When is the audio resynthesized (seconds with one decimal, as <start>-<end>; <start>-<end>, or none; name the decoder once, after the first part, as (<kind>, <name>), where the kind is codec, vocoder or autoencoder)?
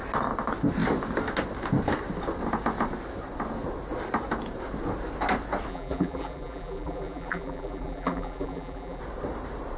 5.7-9.0 (vocoder, BigVGAN v2)